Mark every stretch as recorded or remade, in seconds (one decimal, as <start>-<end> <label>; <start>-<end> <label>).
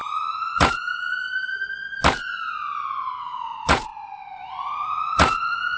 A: 0.0-1.2 remade; 1.2-3.1 recorded; 3.1-3.9 remade; 3.9-4.5 recorded; 4.5-5.8 remade